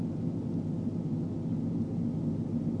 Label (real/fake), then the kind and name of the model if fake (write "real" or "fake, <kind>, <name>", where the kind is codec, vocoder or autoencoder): fake, vocoder, BigVGAN v2